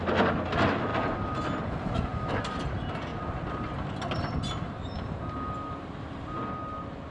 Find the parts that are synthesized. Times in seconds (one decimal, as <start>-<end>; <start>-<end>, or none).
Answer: none